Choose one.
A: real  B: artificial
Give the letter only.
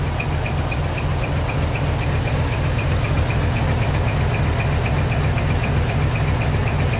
A